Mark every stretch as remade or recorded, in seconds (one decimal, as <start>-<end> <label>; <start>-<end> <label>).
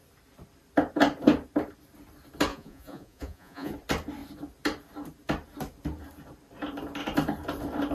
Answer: 0.0-2.5 recorded; 2.5-3.7 remade; 3.7-7.9 recorded